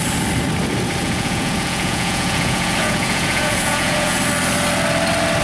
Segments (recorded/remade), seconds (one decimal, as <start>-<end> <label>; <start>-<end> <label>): 0.0-1.0 recorded; 1.0-4.2 remade; 4.2-5.4 recorded